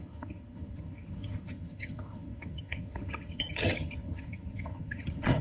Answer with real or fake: fake